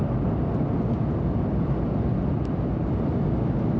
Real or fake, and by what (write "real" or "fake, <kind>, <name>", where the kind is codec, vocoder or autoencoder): real